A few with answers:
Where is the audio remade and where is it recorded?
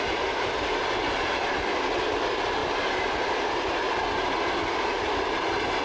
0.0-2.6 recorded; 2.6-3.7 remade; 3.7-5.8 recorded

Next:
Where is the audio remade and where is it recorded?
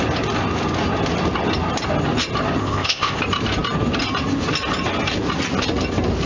0.0-2.6 recorded; 2.6-3.2 remade; 3.2-6.3 recorded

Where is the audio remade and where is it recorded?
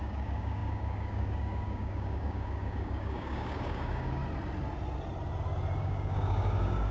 0.0-4.2 remade; 4.2-5.8 recorded; 5.8-6.9 remade